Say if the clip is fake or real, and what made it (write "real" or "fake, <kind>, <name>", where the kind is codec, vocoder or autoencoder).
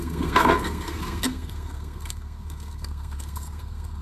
fake, codec, SNAC